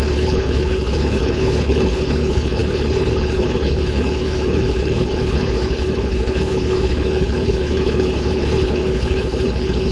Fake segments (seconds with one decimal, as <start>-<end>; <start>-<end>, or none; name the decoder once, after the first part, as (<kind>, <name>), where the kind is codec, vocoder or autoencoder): 0.0-9.9 (codec, HILCodec)